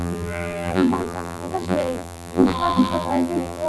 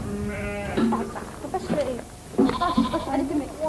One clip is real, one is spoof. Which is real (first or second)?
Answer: second